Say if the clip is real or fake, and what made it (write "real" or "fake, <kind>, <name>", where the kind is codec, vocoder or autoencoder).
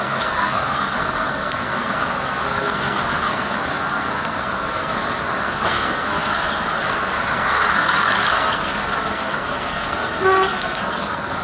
fake, codec, SNAC